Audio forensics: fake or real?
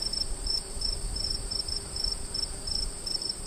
fake